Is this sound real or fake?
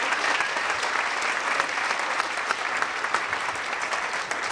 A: real